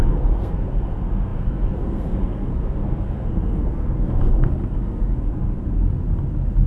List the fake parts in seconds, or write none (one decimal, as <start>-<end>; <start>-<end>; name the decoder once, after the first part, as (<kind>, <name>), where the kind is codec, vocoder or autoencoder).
0.0-5.9 (codec, SNAC)